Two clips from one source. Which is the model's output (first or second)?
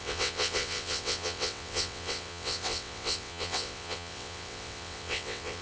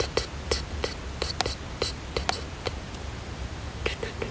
first